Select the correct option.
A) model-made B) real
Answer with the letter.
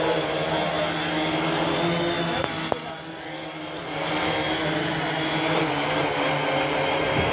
B